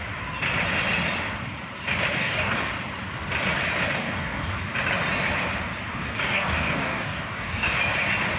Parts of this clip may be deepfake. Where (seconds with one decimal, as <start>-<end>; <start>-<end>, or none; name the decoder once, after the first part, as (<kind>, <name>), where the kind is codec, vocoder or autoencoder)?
2.2-2.7 (codec, DAC); 4.0-4.6; 6.0-7.8